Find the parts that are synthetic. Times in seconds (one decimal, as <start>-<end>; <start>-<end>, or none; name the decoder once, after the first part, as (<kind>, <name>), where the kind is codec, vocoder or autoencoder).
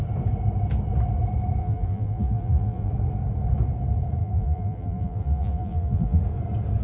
1.6-2.9 (vocoder, BigVGAN v2); 4.2-6.2